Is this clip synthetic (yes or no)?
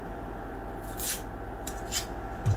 yes